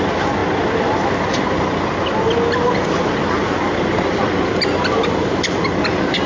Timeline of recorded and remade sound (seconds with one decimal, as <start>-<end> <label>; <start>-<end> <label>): 0.0-6.3 recorded